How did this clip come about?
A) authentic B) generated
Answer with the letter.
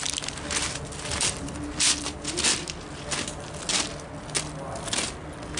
A